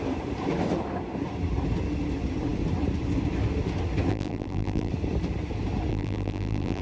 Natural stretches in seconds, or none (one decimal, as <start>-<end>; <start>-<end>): 0.0-4.1; 4.9-5.9

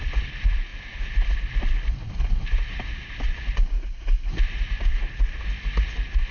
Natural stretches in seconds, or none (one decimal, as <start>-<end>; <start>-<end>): 0.0-6.3

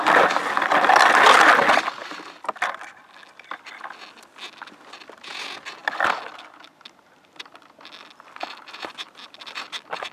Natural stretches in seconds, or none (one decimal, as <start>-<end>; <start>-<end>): 0.0-10.1